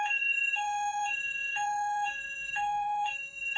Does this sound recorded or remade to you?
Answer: remade